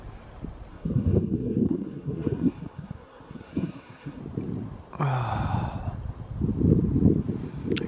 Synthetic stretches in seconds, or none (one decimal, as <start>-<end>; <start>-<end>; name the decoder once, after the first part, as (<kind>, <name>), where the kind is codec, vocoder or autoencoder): 0.7-4.2 (codec, SNAC)